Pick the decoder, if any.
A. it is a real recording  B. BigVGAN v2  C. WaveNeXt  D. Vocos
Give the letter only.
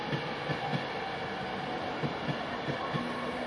A